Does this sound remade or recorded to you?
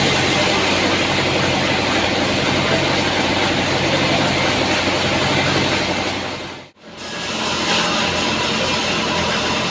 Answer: recorded